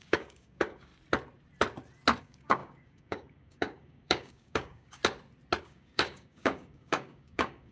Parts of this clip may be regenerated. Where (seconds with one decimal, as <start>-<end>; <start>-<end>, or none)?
0.0-0.9; 2.2-5.0; 5.6-7.7

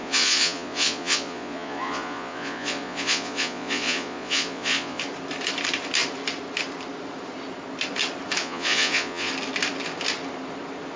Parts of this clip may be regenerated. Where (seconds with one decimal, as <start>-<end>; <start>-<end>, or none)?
0.0-5.0; 8.4-9.3